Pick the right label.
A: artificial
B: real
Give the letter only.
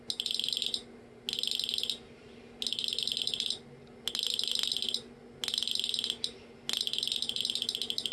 B